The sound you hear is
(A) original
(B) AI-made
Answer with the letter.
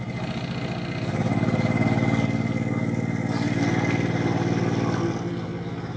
A